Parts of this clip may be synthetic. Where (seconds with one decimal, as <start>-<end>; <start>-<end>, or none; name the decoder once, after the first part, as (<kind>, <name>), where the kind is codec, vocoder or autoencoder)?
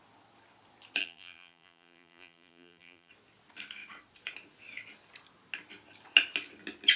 1.0-3.1 (vocoder, BigVGAN v2)